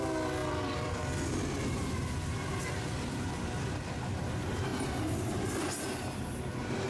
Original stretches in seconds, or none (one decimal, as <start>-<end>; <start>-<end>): 0.0-0.4; 1.5-6.9